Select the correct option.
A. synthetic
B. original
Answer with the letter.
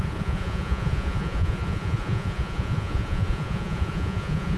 A